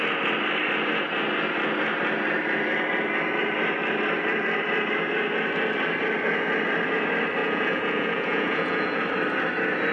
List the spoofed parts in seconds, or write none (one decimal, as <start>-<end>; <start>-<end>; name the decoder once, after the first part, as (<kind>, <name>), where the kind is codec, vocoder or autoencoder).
7.4-9.0 (vocoder, Vocos)